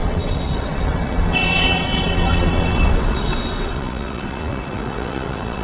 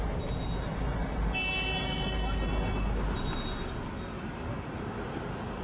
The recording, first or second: second